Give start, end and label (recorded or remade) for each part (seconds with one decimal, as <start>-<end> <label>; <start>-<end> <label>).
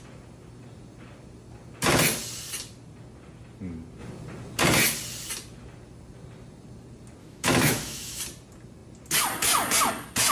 0.0-7.2 recorded; 7.2-8.2 remade; 8.2-10.3 recorded